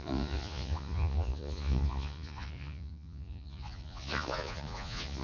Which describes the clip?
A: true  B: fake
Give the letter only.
B